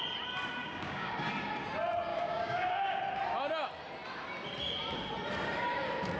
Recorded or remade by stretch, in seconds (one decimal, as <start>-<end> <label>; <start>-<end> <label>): 0.0-0.6 recorded; 0.6-1.3 remade; 1.3-2.1 recorded; 2.1-3.0 remade; 3.0-6.2 recorded